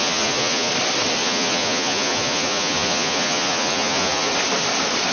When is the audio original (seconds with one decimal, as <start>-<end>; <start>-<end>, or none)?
0.7-1.2; 4.3-5.1